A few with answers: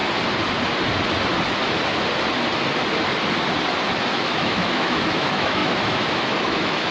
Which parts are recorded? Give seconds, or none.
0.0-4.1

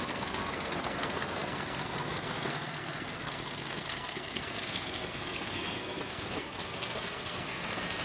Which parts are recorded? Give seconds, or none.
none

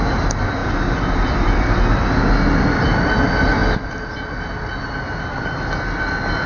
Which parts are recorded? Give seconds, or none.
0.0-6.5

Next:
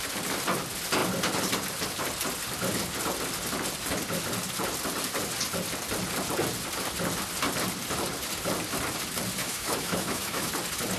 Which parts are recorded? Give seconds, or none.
0.0-9.4; 10.5-11.0

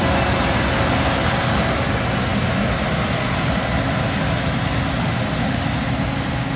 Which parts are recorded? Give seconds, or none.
0.0-5.0; 5.6-6.6

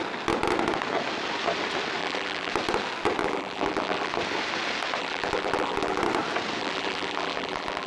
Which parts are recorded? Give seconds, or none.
0.0-2.0; 2.5-3.2; 4.1-5.0; 6.0-6.6

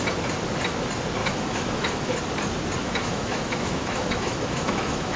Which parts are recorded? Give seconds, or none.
0.0-1.2; 2.2-2.8

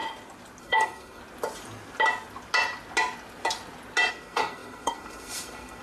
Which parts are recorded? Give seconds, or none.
0.0-0.6; 1.2-4.1